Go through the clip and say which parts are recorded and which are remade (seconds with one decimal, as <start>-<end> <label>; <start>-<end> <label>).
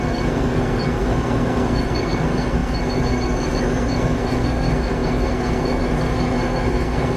0.0-7.2 remade